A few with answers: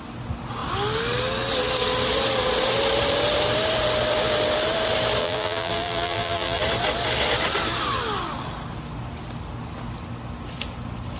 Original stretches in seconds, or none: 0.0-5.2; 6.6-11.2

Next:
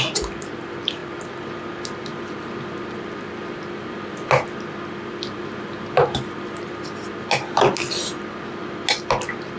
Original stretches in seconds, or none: 0.0-9.6

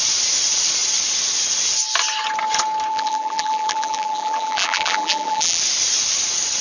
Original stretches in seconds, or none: 0.0-2.9; 5.6-6.6

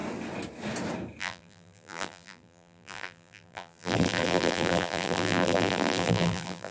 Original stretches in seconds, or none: 0.0-1.2

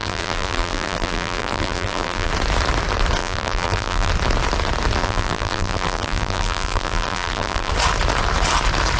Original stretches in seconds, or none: 2.3-3.2; 4.1-5.0; 7.7-9.0

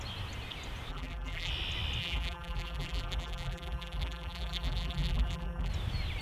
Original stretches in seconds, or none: 0.0-0.9; 1.5-2.0; 5.7-6.2